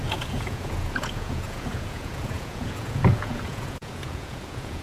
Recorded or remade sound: remade